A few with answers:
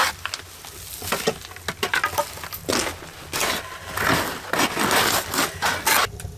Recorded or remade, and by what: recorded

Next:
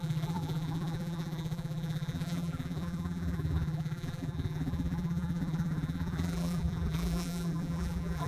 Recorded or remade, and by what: remade, vocoder, BigVGAN v2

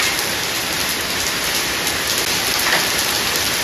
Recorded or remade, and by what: recorded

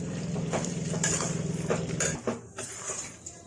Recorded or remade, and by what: remade, vocoder, BigVGAN v2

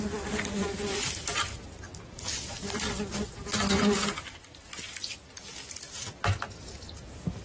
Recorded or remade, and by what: recorded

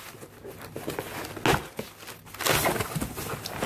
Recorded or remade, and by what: recorded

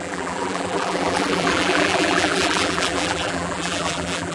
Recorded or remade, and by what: remade, vocoder, BigVGAN v2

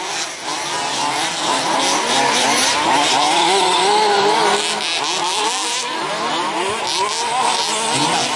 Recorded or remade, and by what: recorded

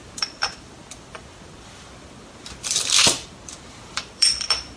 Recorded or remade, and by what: remade, vocoder, BigVGAN v2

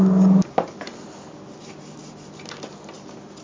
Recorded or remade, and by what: recorded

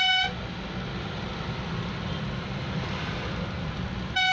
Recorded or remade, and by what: recorded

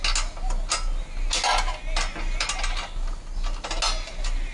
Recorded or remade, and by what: recorded